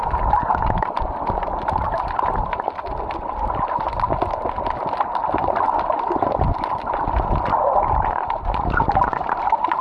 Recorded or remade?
recorded